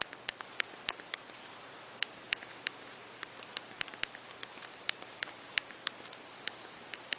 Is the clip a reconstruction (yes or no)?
yes